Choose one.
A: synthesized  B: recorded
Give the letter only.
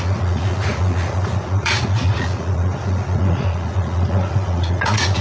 A